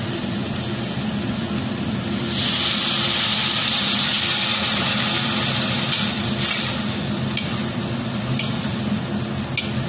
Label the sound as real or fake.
real